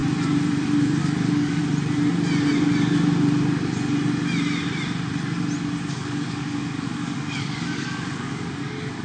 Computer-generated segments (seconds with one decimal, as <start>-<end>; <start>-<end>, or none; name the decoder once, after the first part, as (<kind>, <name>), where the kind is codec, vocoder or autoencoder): 1.0-1.6 (codec, DAC); 5.9-9.0